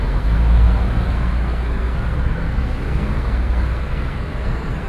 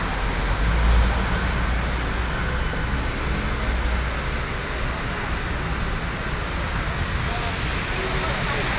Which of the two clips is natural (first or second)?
second